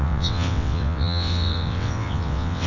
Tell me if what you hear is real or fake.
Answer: fake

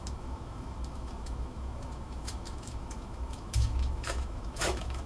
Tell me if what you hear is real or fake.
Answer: fake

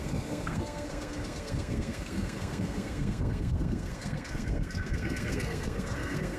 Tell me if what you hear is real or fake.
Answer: fake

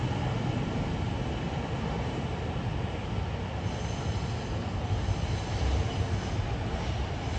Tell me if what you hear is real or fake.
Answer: real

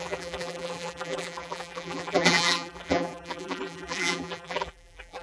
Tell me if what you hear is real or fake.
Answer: fake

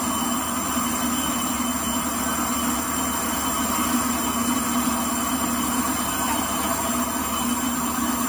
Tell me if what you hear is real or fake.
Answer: real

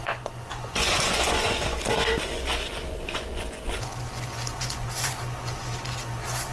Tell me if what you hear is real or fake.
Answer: fake